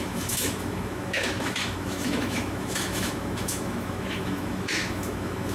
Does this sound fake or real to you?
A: fake